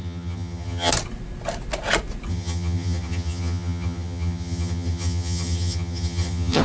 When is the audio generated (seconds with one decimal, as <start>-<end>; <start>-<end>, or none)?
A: 0.0-0.9; 2.3-6.6